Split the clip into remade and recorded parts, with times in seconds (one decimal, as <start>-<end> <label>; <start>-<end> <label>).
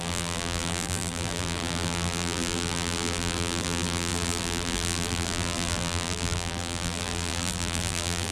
0.0-8.3 remade